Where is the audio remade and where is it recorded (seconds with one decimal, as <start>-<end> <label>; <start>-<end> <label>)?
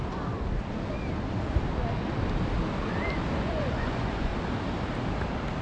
0.0-3.4 recorded; 3.4-4.3 remade; 4.3-5.6 recorded